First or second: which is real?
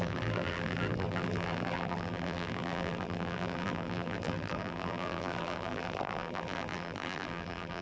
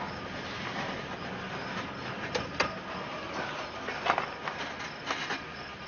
second